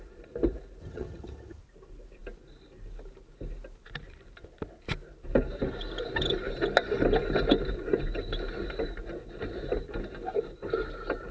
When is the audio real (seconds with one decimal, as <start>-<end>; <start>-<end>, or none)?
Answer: 0.0-0.8; 1.6-11.3